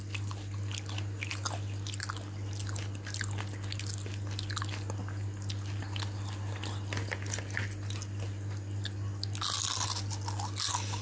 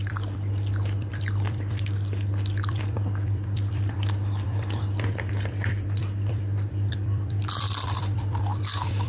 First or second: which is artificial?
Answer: second